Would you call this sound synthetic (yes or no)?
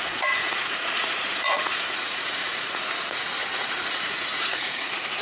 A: yes